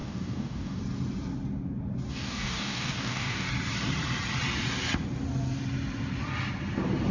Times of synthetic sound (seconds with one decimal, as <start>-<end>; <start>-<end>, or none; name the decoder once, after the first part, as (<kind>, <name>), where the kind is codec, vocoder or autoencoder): 0.0-0.8 (codec, DAC); 2.1-3.5